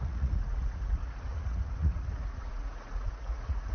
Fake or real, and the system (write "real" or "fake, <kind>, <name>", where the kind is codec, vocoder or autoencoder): fake, vocoder, Vocos